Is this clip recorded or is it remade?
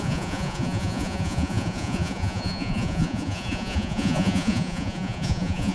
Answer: remade